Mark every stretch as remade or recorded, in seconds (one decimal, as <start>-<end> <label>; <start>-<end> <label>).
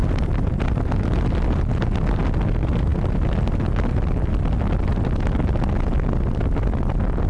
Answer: 0.0-7.3 recorded